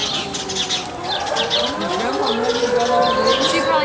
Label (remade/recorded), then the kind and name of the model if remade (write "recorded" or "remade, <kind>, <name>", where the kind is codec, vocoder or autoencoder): recorded